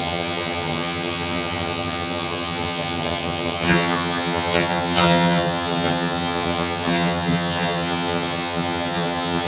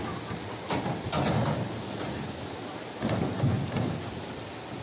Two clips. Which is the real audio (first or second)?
second